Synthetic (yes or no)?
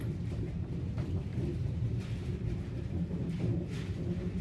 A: yes